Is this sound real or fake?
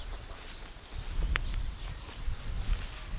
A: real